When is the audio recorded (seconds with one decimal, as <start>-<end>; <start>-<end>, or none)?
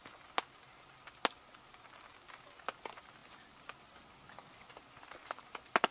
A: 0.0-5.9